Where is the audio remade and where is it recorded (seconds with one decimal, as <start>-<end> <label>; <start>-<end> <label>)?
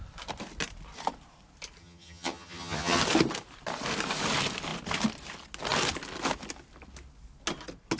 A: 0.0-1.8 recorded; 1.8-3.0 remade; 3.0-8.0 recorded